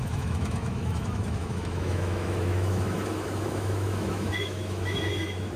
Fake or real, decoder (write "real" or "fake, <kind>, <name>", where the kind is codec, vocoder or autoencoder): fake, autoencoder, DAC-VAE